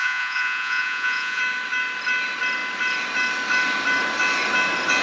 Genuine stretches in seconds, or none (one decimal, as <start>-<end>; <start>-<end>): 1.4-5.0